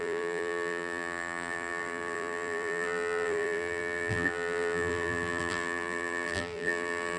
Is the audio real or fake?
fake